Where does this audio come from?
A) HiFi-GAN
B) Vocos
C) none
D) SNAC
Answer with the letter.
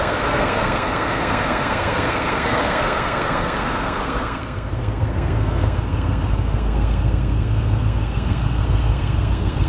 D